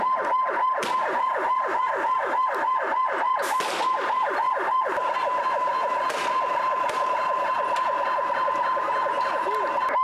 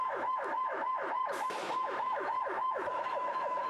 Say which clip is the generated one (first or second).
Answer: second